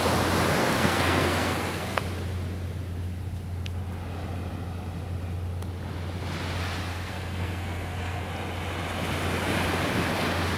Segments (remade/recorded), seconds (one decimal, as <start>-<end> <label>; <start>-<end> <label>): 0.0-0.6 recorded; 0.6-2.0 remade; 2.0-6.9 recorded; 6.9-8.3 remade; 8.3-10.6 recorded